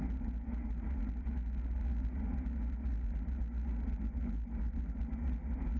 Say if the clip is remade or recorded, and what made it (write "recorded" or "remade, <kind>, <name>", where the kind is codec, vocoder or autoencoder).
recorded